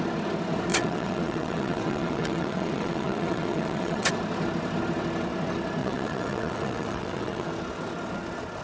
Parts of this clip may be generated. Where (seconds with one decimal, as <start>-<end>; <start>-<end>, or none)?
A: 0.7-4.1; 5.8-7.5